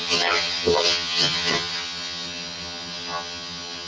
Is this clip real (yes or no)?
no